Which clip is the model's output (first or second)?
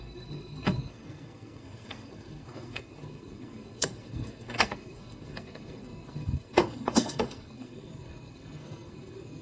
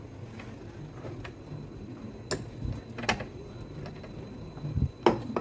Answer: first